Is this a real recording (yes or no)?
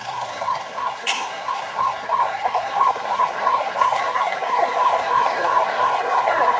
no